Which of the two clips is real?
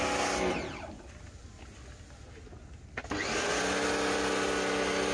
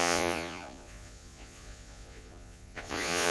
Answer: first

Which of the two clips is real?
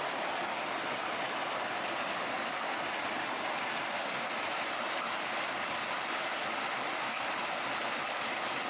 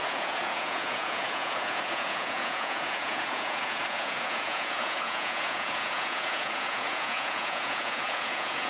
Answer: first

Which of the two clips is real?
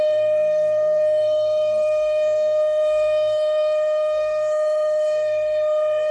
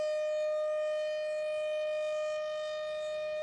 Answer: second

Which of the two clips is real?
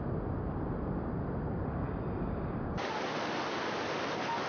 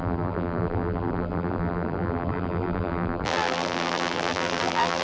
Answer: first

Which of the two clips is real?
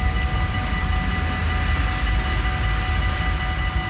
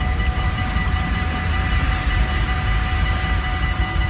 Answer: first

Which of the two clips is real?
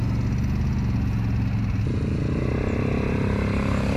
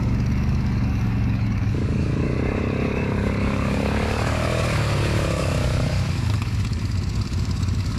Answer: first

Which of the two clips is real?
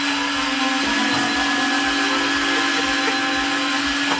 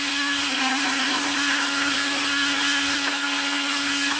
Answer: first